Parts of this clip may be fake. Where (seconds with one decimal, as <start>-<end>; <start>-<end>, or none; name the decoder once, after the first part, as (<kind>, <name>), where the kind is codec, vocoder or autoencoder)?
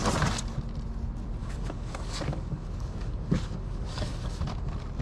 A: 1.4-4.4 (codec, DAC)